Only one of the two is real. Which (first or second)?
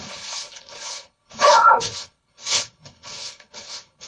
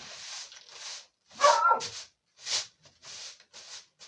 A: second